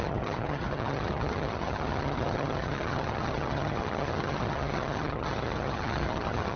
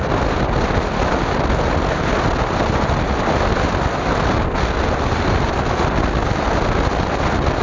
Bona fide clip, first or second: second